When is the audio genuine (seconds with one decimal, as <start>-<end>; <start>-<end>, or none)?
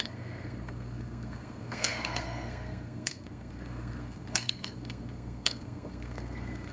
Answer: none